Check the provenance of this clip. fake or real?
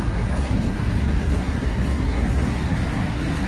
fake